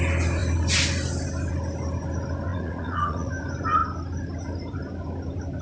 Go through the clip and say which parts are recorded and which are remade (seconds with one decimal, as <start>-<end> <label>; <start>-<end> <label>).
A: 0.0-2.5 recorded; 2.5-3.3 remade; 3.3-5.6 recorded